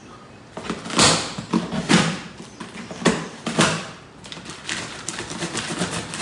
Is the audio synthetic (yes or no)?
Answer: no